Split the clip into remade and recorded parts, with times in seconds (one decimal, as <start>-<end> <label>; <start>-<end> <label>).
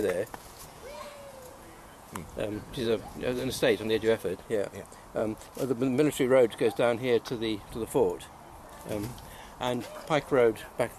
0.0-4.7 remade; 4.7-11.0 recorded